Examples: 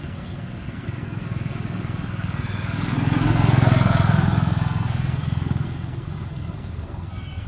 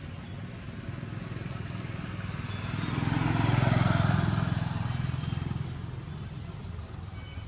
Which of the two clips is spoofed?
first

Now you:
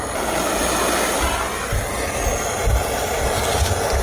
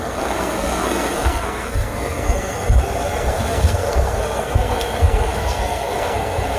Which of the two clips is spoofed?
second